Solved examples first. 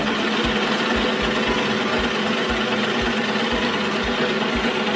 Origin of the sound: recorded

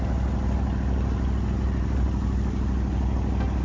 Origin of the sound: recorded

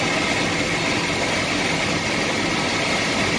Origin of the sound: recorded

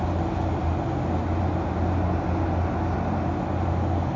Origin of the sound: recorded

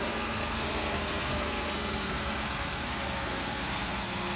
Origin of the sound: remade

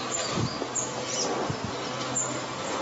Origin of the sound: recorded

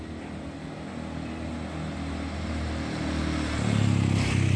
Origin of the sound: recorded